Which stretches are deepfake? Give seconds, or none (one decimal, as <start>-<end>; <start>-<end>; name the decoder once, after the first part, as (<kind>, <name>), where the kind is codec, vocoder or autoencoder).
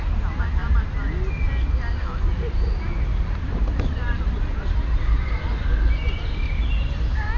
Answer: none